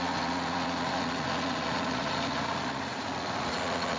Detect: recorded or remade remade